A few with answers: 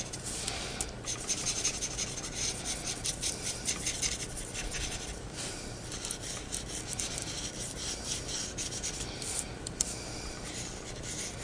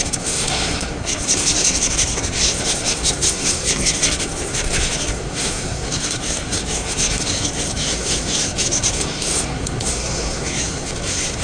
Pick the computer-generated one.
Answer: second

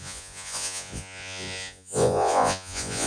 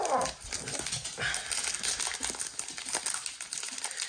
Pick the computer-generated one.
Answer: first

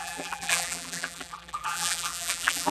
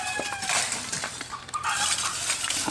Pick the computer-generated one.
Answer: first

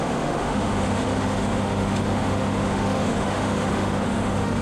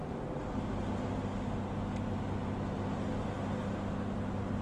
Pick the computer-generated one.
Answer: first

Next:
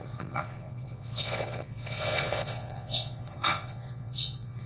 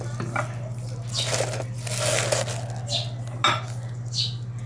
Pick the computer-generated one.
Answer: first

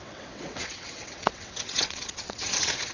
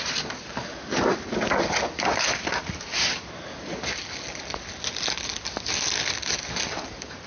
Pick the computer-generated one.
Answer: first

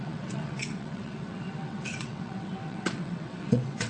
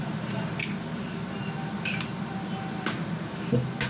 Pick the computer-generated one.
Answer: first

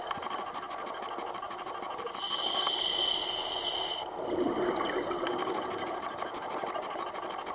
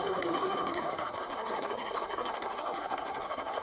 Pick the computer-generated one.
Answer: second